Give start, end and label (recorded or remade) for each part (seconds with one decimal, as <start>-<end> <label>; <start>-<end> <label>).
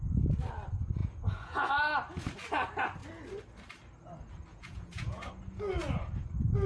0.0-1.0 recorded; 1.0-1.7 remade; 1.7-4.5 recorded; 4.5-5.3 remade; 5.3-6.7 recorded